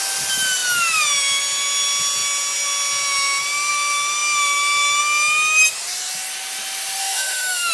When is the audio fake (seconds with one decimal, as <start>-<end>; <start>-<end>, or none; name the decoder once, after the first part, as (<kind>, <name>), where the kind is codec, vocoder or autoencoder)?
7.0-7.7 (autoencoder, DAC-VAE)